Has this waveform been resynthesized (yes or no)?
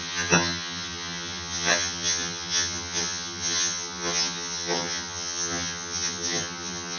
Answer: yes